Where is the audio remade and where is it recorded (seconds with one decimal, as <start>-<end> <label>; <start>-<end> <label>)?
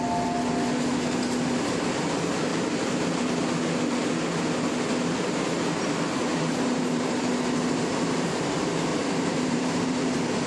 0.0-2.5 recorded; 2.5-3.4 remade; 3.4-6.3 recorded; 6.3-7.1 remade; 7.1-8.9 recorded; 8.9-10.5 remade